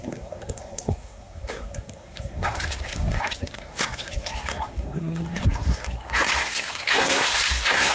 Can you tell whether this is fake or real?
fake